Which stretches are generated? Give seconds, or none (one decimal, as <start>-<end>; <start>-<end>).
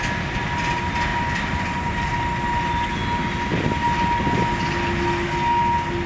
1.1-2.2